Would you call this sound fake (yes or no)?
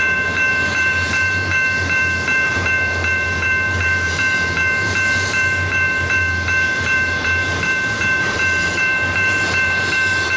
yes